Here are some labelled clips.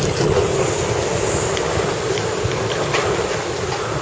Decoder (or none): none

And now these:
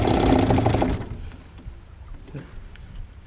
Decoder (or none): none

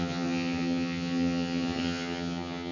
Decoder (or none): vocoder, HiFi-GAN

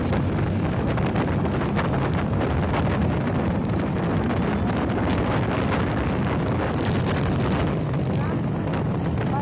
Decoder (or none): none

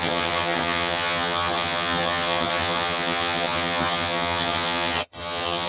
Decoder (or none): vocoder, HiFi-GAN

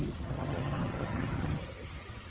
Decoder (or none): vocoder, HiFi-GAN